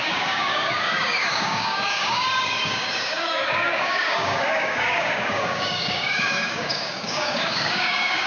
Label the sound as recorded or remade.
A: remade